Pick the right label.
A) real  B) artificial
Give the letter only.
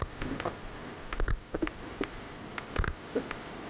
A